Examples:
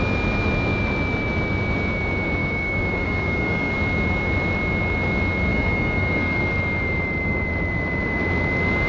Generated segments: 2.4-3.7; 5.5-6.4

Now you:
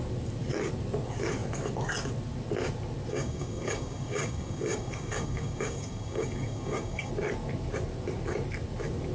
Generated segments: 3.1-7.1

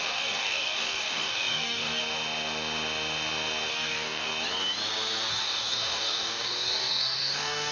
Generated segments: 0.0-2.0; 3.7-4.3; 5.3-7.7

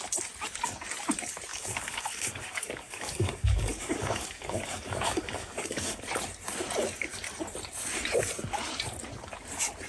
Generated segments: 1.5-6.0

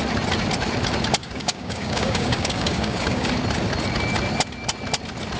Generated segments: 1.2-3.3

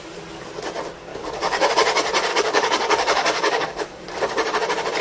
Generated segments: 1.1-1.7; 2.3-4.0

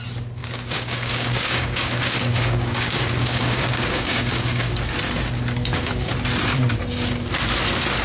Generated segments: 0.4-4.7